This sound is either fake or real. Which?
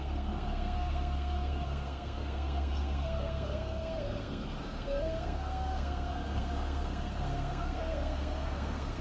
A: fake